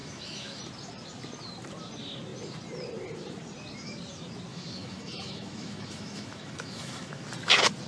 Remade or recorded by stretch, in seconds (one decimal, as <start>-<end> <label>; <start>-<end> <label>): 0.0-0.6 remade; 0.6-4.5 recorded; 4.5-7.2 remade; 7.2-7.9 recorded